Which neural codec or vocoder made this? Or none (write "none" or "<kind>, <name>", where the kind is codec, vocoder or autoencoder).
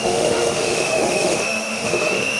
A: autoencoder, DAC-VAE